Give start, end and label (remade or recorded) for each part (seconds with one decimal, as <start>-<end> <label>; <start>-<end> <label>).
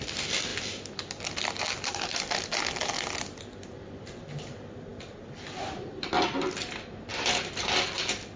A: 0.0-8.4 recorded